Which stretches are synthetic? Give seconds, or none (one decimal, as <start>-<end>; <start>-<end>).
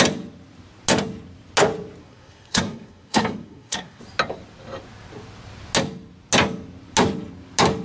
2.0-4.0